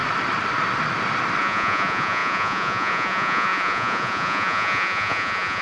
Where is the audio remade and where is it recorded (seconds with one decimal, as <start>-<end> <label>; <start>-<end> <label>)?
0.0-1.4 recorded; 1.4-5.6 remade